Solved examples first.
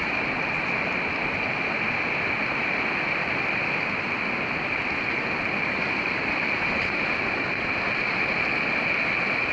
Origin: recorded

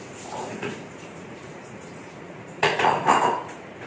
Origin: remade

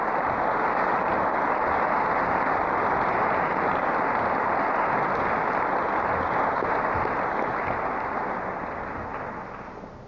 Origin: recorded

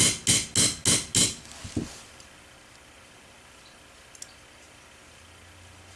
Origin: recorded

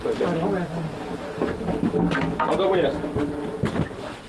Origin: recorded